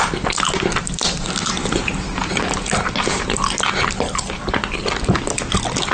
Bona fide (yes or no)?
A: yes